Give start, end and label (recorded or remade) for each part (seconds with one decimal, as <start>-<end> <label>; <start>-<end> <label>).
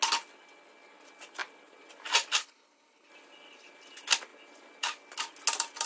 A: 0.0-2.4 recorded; 2.4-3.1 remade; 3.1-5.9 recorded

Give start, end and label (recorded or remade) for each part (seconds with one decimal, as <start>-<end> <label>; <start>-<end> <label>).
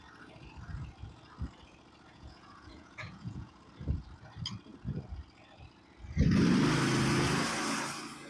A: 0.0-2.1 recorded; 2.1-3.6 remade; 3.6-8.3 recorded